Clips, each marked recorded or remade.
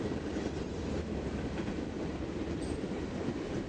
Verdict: recorded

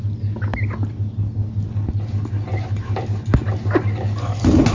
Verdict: recorded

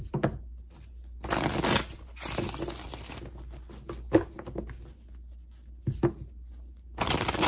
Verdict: recorded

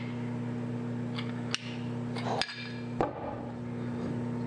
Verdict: recorded